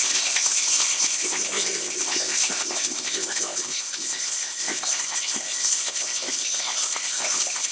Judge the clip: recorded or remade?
remade